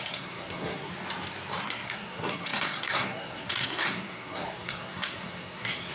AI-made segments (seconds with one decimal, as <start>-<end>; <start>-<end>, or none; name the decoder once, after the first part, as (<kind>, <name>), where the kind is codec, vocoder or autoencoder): 0.0-0.9 (codec, SNAC); 1.6-5.9